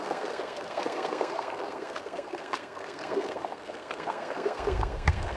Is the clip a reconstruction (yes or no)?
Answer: yes